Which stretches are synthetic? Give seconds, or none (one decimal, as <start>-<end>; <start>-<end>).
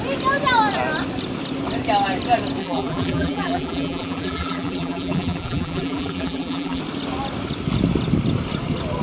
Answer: 2.6-6.8